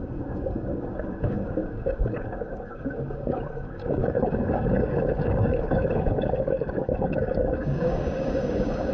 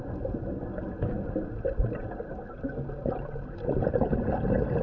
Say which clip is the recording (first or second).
second